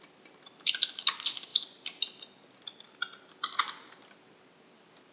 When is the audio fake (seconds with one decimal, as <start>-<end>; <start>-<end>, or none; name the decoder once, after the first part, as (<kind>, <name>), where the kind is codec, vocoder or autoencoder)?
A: none